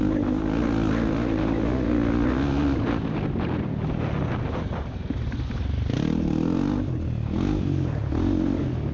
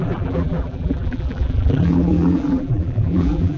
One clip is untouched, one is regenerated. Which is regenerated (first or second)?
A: second